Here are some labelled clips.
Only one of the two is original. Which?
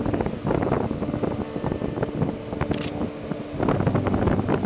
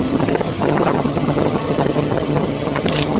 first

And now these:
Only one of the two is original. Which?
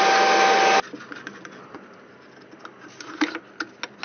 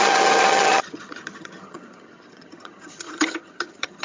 first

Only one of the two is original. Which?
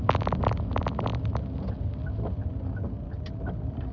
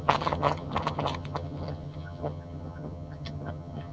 first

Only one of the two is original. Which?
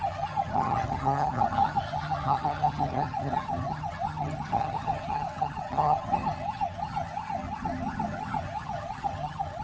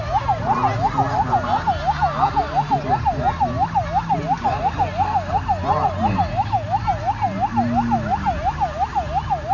second